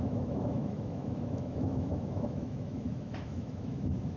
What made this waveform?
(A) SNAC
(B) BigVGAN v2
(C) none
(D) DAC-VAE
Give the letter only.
D